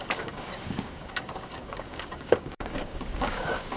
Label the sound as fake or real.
fake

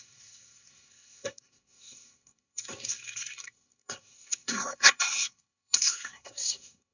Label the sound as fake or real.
fake